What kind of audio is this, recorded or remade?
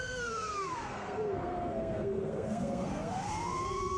remade